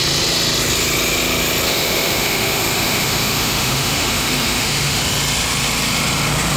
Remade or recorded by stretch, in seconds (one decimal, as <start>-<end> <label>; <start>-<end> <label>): 0.0-1.7 recorded; 1.7-5.0 remade; 5.0-6.6 recorded

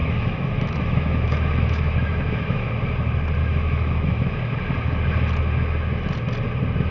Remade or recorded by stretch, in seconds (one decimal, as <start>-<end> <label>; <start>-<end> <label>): 0.0-2.7 remade; 2.7-3.4 recorded; 3.4-4.3 remade; 4.3-6.9 recorded

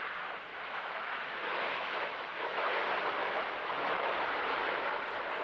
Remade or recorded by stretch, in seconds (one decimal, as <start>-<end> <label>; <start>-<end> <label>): 0.0-0.5 recorded; 0.5-2.7 remade; 2.7-3.2 recorded; 3.2-4.1 remade; 4.1-5.4 recorded

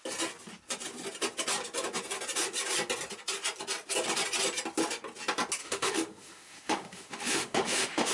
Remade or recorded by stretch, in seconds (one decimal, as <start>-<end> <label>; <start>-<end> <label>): 0.0-5.6 recorded; 5.6-8.1 remade

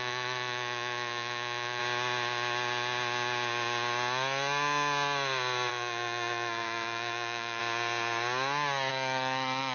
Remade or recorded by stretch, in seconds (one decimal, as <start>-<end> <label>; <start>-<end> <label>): 0.0-1.8 remade; 1.8-5.7 recorded; 5.7-7.6 remade; 7.6-8.9 recorded; 8.9-9.7 remade

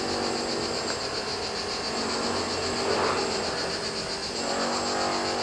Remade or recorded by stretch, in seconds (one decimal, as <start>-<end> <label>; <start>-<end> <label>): 0.0-5.4 recorded

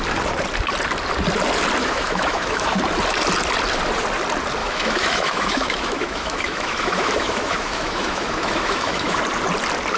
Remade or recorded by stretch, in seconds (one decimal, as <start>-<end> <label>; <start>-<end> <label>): 0.0-1.8 recorded; 1.8-2.8 remade; 2.8-4.6 recorded; 4.6-9.2 remade; 9.2-10.0 recorded